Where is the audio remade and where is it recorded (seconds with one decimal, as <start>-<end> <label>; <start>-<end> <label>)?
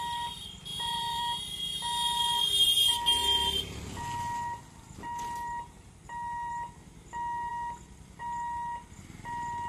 0.0-0.7 recorded; 0.7-1.2 remade; 1.2-9.7 recorded